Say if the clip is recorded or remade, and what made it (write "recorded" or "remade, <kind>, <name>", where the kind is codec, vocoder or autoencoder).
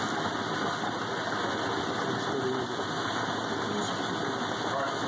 recorded